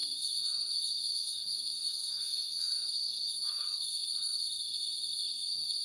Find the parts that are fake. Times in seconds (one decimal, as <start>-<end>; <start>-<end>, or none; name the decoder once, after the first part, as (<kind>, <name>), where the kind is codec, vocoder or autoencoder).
0.0-5.8 (codec, SNAC)